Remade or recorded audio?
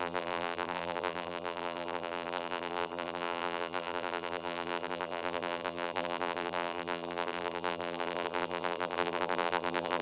remade